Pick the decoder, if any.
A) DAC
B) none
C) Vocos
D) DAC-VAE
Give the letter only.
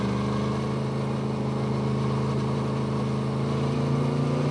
B